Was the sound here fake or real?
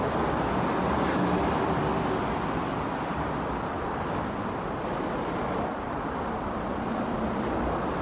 real